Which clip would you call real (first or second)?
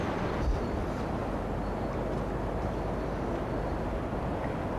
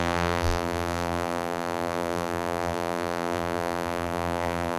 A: first